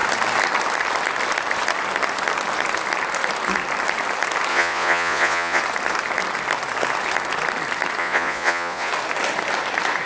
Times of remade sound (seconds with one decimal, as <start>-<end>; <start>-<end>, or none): 4.5-5.6; 8.0-8.9